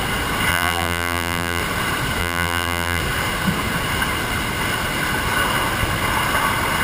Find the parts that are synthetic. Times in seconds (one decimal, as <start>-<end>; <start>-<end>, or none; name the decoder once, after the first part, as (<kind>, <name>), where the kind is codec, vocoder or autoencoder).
0.5-1.6 (vocoder, BigVGAN v2); 2.2-3.0